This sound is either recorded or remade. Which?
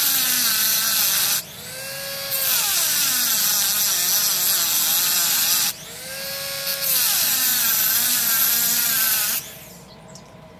recorded